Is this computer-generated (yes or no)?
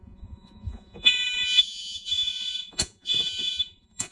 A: yes